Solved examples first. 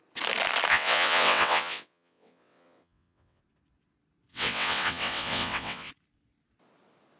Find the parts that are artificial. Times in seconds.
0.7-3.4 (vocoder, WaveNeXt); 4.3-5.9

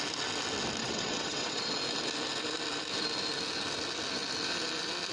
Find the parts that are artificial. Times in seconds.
0.8-1.7 (vocoder, WaveNeXt)

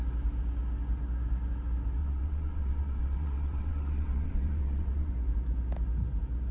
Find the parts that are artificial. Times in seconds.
2.0-5.1 (vocoder, WaveNeXt)

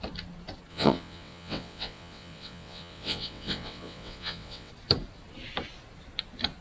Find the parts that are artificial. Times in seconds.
0.7-4.7 (vocoder, WaveNeXt)

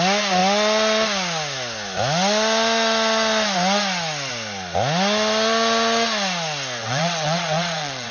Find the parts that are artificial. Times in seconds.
6.8-8.1 (vocoder, WaveNeXt)

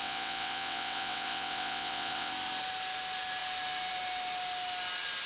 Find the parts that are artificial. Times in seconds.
0.0-2.3 (vocoder, WaveNeXt)

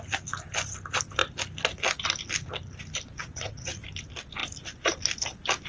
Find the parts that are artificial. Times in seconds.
3.2-3.8 (vocoder, WaveNeXt)

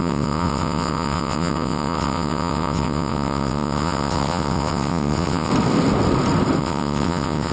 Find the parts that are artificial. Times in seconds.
0.0-5.5 (vocoder, WaveNeXt); 6.6-7.5